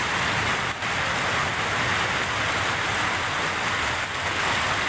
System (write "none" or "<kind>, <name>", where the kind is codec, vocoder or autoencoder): none